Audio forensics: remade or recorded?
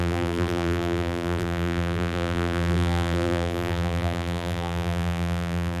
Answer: remade